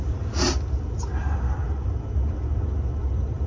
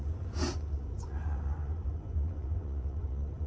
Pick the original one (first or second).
first